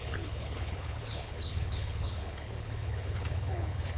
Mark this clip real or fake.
fake